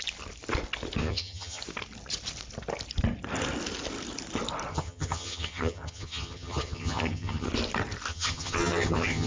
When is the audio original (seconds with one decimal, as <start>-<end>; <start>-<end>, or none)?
0.0-1.0; 1.6-4.7; 7.5-8.1